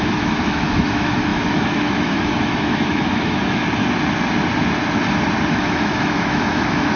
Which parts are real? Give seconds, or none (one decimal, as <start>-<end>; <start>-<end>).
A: 3.6-5.5